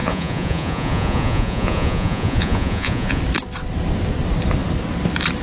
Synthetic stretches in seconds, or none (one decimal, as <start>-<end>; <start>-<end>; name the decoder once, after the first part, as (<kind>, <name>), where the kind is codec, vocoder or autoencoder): 0.0-3.2 (vocoder, Vocos)